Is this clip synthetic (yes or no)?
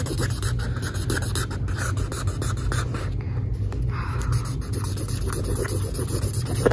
no